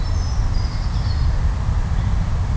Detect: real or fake real